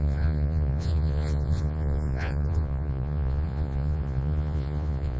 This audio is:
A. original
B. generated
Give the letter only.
B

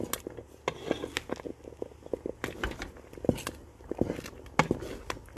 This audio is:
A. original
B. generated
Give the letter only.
A